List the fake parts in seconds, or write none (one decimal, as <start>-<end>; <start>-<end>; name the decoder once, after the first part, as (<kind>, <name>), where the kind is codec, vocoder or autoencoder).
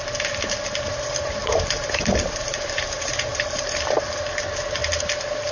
0.9-4.2 (vocoder, BigVGAN v2)